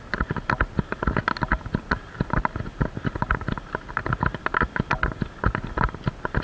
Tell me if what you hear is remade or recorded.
recorded